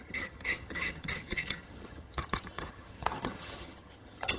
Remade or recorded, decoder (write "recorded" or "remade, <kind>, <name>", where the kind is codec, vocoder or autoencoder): remade, vocoder, HiFi-GAN